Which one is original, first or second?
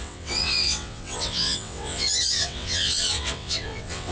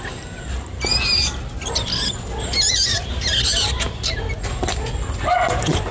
second